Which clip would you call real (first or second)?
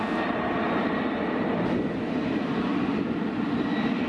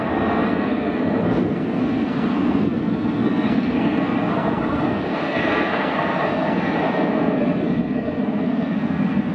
first